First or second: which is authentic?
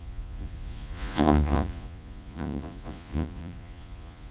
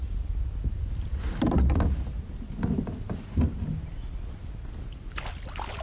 second